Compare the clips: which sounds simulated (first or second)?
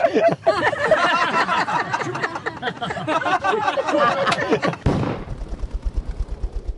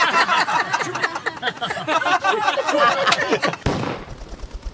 first